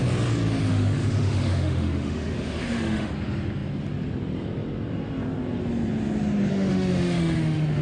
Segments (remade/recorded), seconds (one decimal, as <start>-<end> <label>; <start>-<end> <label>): 0.0-0.7 recorded; 0.7-3.1 remade; 3.1-6.5 recorded; 6.5-7.8 remade